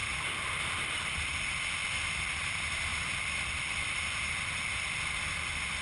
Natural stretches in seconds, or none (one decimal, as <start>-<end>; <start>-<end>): 0.0-5.8